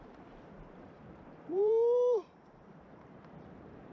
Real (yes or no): no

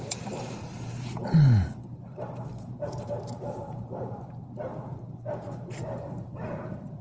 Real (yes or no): no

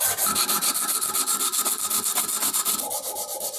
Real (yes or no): yes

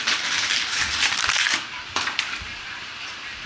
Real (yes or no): no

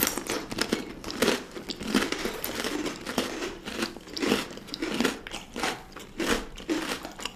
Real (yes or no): no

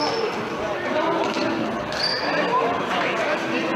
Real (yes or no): yes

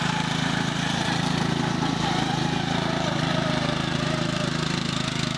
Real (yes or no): no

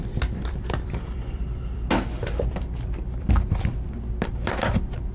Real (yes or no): no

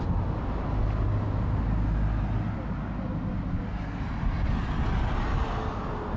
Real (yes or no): yes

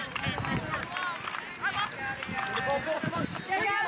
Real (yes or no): yes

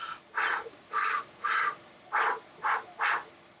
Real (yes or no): yes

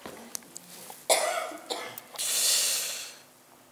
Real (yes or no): yes